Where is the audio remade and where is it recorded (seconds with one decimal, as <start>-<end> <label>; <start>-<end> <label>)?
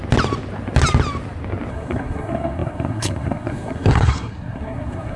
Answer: 0.0-1.7 recorded; 1.7-5.2 remade